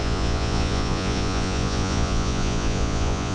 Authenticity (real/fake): fake